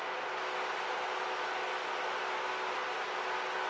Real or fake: real